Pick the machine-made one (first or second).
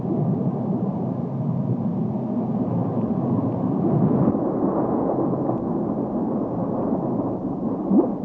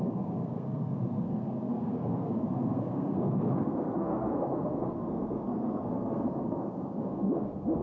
second